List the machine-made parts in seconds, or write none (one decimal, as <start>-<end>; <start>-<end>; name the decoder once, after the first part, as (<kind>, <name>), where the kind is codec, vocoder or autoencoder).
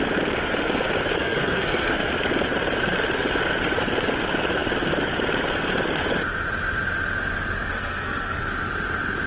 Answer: 1.1-2.1 (codec, SNAC); 7.7-8.5